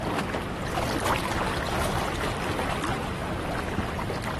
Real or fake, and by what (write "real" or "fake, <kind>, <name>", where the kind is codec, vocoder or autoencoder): real